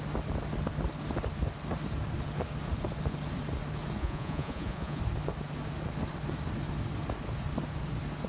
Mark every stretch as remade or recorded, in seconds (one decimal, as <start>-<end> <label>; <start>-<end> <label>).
0.0-4.0 recorded; 4.0-5.0 remade; 5.0-8.3 recorded